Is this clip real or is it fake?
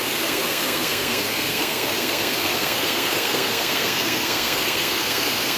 fake